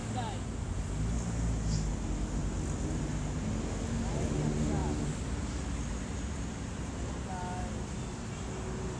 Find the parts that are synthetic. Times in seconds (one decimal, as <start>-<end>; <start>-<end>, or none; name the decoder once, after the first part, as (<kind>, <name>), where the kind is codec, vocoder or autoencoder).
none